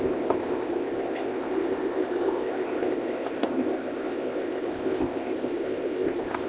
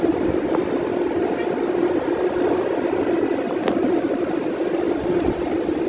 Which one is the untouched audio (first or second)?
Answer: second